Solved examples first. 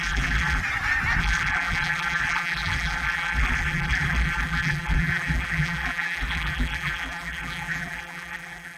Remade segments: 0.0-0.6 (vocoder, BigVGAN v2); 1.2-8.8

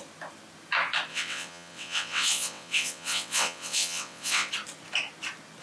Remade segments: 1.1-4.5 (vocoder, WaveNeXt)